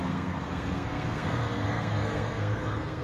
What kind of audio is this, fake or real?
fake